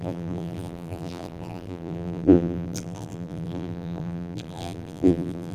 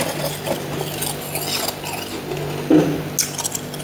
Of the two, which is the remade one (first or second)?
first